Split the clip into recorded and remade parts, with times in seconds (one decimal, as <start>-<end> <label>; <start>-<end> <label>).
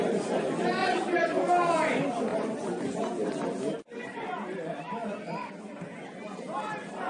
0.0-0.8 recorded; 0.8-1.5 remade; 1.5-7.1 recorded